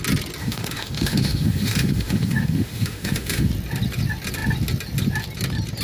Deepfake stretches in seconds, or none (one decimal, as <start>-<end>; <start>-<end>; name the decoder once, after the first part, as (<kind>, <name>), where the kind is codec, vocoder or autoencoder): 0.4-3.5 (autoencoder, DAC-VAE)